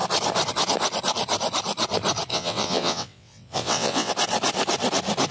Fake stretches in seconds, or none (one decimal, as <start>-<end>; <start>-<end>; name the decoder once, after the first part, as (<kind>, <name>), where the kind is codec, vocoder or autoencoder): 2.3-4.1 (vocoder, WaveNeXt)